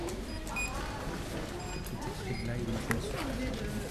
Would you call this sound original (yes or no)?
yes